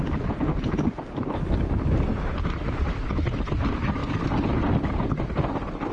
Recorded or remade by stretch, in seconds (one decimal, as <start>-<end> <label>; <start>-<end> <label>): 0.0-5.9 recorded